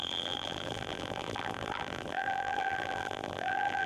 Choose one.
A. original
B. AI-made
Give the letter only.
B